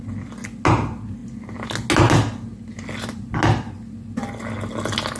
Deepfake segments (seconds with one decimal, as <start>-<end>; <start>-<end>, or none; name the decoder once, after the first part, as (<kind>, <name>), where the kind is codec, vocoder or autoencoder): none